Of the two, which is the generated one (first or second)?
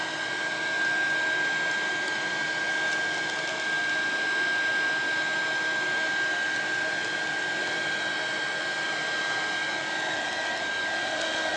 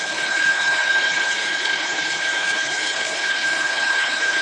second